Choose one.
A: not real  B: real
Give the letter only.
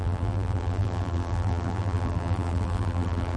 A